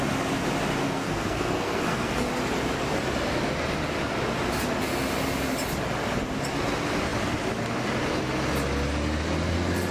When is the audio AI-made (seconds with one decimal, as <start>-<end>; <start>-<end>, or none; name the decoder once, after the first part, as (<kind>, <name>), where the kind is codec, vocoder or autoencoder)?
0.8-2.3 (codec, SNAC)